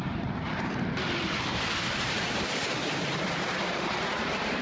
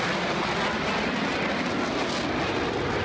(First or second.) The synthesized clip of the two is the first